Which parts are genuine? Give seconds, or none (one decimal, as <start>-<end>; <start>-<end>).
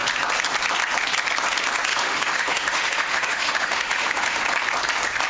0.0-1.9; 4.4-5.3